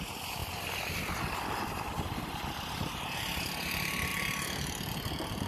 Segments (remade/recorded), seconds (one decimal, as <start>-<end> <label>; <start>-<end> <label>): 0.0-5.5 recorded